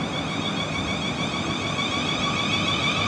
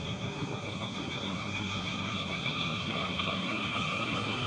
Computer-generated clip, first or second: second